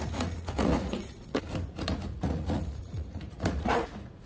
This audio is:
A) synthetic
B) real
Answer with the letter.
A